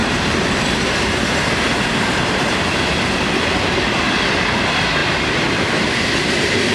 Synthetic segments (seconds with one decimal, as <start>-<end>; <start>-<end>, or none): 0.0-2.4